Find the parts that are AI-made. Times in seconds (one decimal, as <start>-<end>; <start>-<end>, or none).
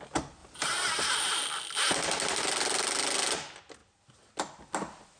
0.4-1.4